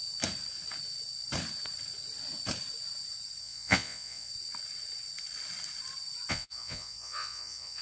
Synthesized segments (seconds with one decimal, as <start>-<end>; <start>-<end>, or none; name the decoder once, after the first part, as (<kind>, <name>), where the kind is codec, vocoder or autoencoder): 3.4-4.3 (vocoder, Vocos); 6.3-7.8